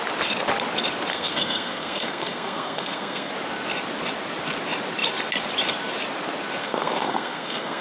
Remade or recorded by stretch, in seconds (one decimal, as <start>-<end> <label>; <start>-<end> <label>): 0.0-1.1 recorded; 1.1-3.3 remade; 3.3-6.6 recorded; 6.6-7.8 remade